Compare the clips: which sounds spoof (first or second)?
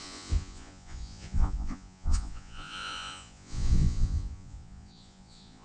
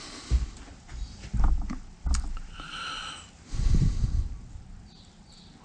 first